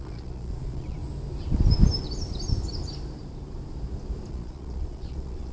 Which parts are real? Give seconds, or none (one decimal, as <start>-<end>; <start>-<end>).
1.0-4.3